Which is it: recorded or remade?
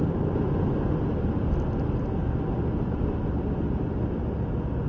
recorded